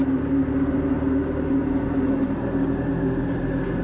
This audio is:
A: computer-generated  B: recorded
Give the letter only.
B